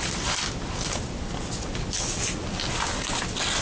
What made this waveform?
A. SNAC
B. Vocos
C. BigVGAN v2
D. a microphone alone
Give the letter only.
D